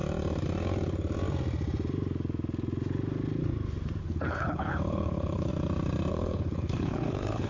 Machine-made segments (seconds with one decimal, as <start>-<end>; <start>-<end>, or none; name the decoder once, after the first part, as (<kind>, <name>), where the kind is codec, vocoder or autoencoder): 4.0-5.5 (codec, HILCodec); 6.1-7.5